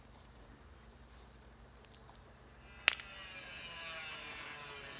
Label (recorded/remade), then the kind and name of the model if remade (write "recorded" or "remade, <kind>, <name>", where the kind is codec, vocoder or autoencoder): recorded